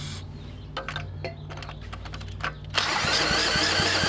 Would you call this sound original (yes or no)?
yes